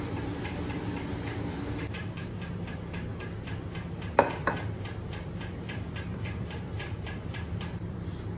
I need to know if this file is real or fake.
fake